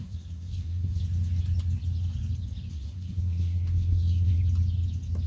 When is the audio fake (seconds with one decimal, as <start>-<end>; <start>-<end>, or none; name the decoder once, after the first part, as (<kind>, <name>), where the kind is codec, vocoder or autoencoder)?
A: 0.0-1.0 (codec, SNAC); 2.7-4.4